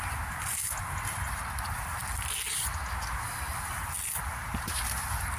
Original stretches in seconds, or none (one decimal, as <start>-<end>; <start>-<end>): 0.0-5.4